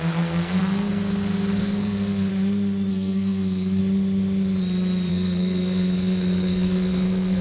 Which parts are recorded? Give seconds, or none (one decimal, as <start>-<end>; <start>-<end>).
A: 2.3-2.9; 3.8-5.1